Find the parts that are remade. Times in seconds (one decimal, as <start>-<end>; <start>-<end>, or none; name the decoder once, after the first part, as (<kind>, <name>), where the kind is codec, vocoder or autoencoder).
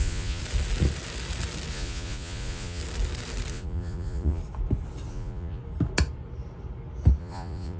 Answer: 0.0-0.4 (vocoder, Vocos); 1.7-2.8; 3.5-4.4; 5.1-5.6; 7.2-7.8